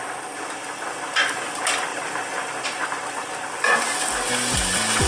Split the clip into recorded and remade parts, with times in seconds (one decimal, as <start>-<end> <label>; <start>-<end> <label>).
0.0-5.1 recorded